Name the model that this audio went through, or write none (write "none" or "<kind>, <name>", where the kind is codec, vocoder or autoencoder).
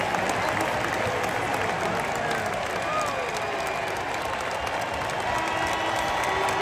none